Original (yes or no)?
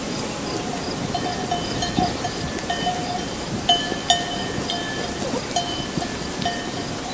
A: yes